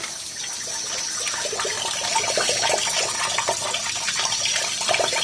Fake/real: real